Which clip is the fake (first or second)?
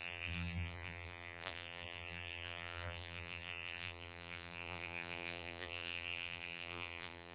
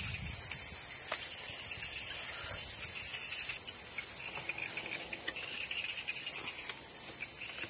first